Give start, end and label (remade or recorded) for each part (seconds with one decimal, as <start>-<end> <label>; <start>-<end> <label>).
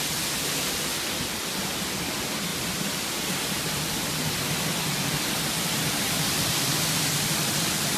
0.0-8.0 recorded